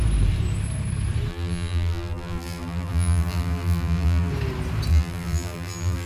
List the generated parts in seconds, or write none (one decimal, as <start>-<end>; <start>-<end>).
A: 1.3-4.3; 4.9-6.1